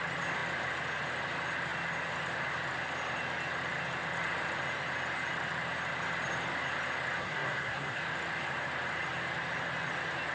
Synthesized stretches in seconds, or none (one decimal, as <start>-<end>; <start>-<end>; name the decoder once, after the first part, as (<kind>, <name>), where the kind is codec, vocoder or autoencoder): 7.2-8.0 (codec, SNAC)